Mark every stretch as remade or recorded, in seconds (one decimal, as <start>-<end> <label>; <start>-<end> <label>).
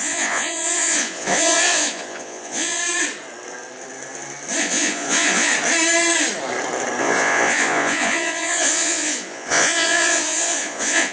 0.0-2.8 remade; 2.8-4.6 recorded; 4.6-5.5 remade; 5.5-7.0 recorded; 7.0-11.1 remade